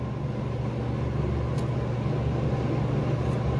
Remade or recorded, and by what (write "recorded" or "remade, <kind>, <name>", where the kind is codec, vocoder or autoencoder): recorded